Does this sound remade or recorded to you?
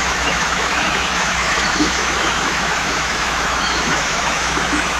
remade